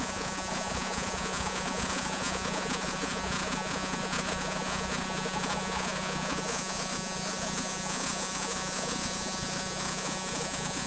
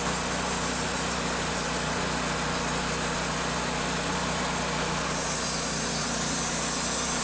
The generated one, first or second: first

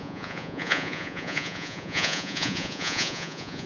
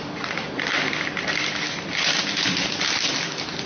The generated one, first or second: first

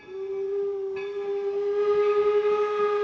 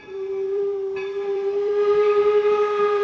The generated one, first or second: second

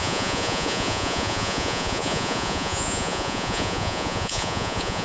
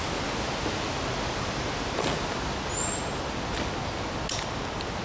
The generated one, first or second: first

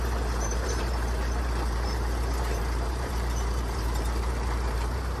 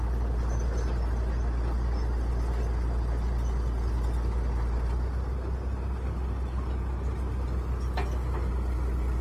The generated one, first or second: first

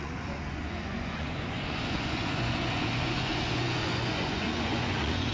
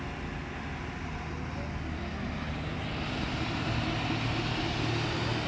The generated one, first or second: first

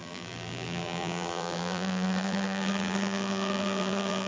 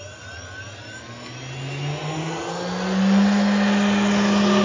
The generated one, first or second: first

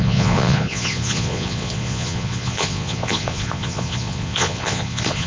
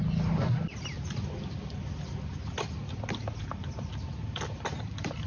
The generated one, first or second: first